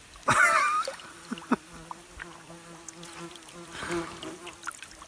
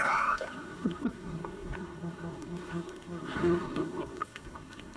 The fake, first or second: second